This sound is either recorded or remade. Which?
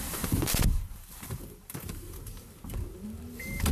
remade